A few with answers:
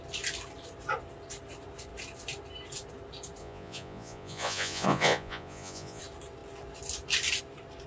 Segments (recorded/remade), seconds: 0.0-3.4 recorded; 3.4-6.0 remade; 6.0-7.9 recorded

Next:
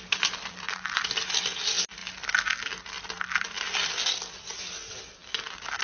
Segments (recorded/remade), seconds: 0.0-5.8 recorded

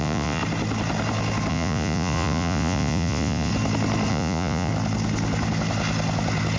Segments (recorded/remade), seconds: 0.0-0.4 remade; 0.4-1.5 recorded; 1.5-3.5 remade; 3.5-4.1 recorded; 4.1-4.7 remade; 4.7-6.6 recorded

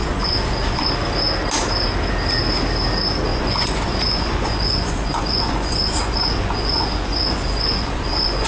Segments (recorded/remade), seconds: 0.0-0.9 remade; 0.9-3.3 recorded; 3.3-8.5 remade

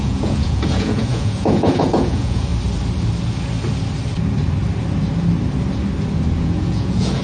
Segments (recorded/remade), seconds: 0.0-2.5 remade; 2.5-6.4 recorded; 6.4-7.2 remade